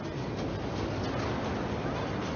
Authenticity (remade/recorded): recorded